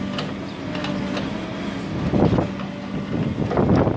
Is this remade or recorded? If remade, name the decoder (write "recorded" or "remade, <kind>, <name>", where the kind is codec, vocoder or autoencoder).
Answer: recorded